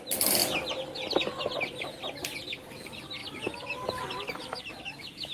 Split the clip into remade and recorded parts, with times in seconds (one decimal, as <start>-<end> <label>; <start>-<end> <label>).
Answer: 0.0-5.3 recorded

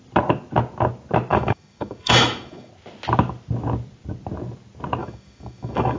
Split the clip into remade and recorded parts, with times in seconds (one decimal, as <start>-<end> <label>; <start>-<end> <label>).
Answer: 0.0-1.3 recorded; 1.3-2.7 remade; 2.7-5.0 recorded; 5.0-6.0 remade

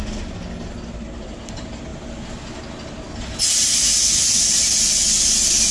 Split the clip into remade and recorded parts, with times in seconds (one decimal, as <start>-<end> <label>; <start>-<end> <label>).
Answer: 0.0-5.7 recorded